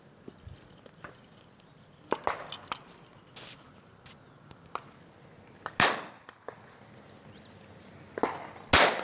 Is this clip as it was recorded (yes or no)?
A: yes